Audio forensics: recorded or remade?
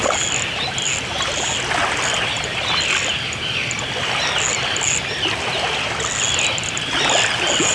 recorded